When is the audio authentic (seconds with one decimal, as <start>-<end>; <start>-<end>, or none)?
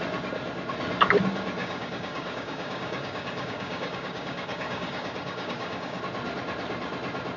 0.0-1.6; 6.0-7.4